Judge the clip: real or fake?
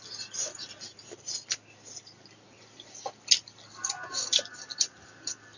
real